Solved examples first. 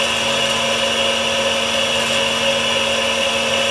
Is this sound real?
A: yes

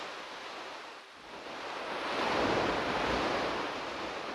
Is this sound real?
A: yes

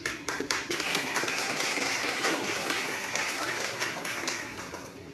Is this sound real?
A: no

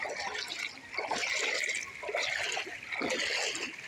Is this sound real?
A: yes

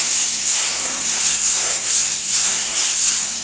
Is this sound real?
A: no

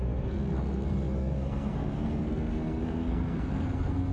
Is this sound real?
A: no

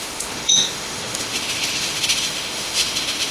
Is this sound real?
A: no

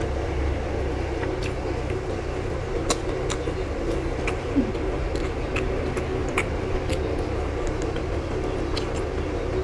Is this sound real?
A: yes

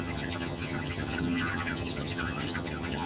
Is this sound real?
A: no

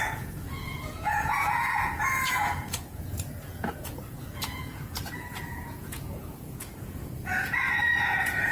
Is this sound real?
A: no